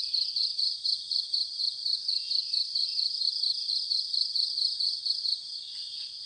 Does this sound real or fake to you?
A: fake